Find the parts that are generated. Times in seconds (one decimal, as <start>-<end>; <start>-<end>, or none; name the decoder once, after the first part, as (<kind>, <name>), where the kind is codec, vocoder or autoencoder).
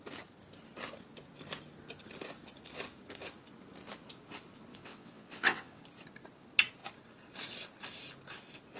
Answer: 4.7-5.8 (vocoder, WaveNeXt)